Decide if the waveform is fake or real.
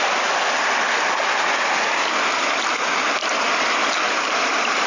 real